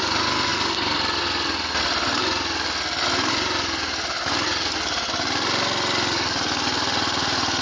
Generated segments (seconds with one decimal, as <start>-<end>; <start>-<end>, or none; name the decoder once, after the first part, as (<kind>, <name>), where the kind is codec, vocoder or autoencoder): none